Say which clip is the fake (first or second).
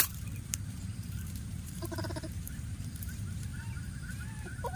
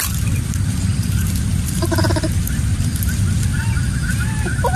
first